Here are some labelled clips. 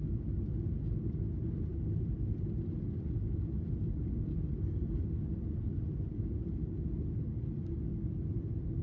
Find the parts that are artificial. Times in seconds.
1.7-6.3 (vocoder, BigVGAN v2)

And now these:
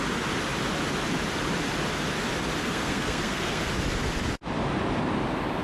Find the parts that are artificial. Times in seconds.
2.6-3.7 (codec, SNAC)

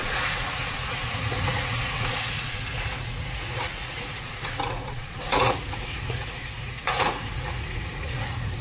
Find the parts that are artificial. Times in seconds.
0.0-8.6 (vocoder, Vocos)

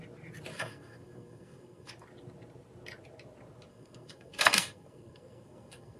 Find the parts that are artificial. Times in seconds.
0.5-1.9 (codec, SNAC); 3.7-6.0